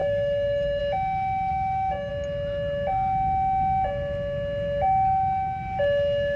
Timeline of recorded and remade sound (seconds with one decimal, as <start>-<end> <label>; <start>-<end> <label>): 0.0-0.8 remade; 0.8-1.5 recorded; 1.5-2.1 remade; 2.1-6.4 recorded